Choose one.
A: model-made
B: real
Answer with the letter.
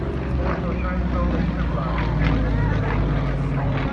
B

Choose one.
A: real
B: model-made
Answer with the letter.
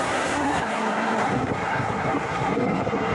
B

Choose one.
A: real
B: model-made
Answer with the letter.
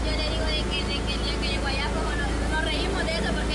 A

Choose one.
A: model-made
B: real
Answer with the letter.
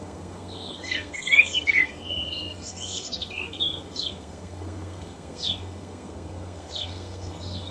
A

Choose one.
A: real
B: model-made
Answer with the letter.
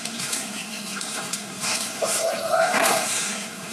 B